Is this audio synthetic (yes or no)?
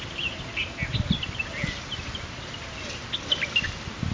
no